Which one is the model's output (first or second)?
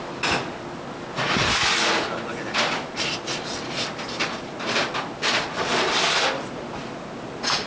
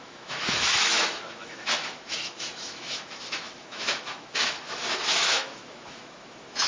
second